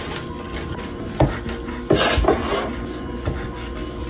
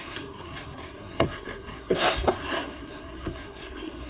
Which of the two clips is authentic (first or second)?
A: first